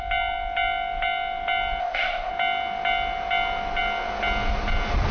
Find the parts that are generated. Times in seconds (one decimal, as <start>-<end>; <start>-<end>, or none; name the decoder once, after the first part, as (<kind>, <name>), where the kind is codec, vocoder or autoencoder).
1.8-2.3 (codec, ZipCodec)